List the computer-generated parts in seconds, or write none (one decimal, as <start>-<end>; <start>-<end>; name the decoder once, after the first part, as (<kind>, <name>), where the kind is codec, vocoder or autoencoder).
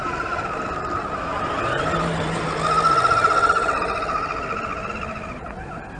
none